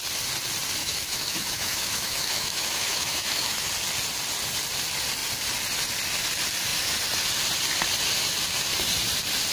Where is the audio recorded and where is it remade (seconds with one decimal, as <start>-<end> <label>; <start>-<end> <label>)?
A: 0.0-0.8 recorded; 0.8-3.7 remade; 3.7-9.5 recorded

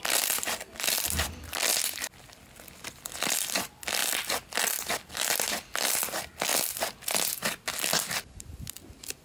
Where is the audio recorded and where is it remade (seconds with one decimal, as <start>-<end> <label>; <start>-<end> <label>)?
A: 0.0-9.2 recorded

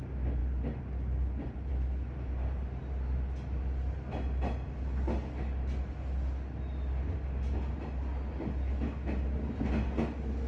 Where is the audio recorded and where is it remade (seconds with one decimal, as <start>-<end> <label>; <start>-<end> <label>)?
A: 0.0-10.5 recorded